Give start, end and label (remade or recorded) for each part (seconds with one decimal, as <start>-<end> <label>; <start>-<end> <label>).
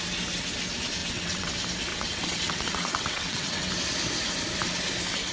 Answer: 0.0-1.0 recorded; 1.0-1.5 remade; 1.5-1.9 recorded; 1.9-3.7 remade; 3.7-5.3 recorded